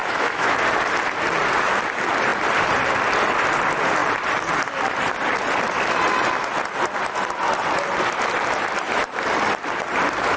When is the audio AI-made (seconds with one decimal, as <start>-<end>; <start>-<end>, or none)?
0.0-0.6